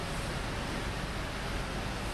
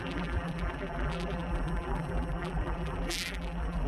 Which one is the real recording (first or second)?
first